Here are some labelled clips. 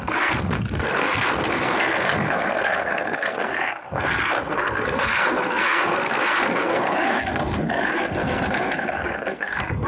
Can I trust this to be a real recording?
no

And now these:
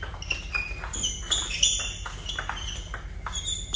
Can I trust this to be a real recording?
yes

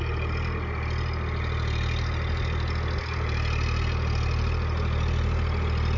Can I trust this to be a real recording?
yes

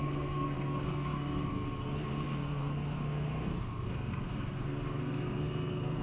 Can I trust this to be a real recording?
no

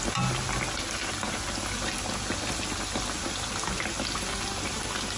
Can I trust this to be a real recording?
yes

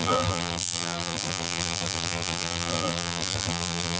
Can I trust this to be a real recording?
no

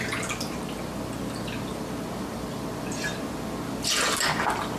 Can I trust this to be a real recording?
yes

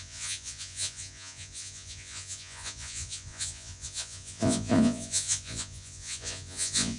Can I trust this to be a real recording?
no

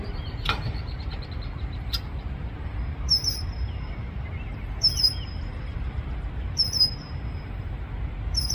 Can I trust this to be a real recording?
no